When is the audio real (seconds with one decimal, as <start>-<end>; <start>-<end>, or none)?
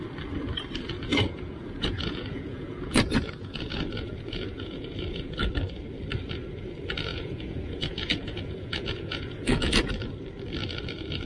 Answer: 0.0-1.1; 5.5-7.1; 9.9-11.3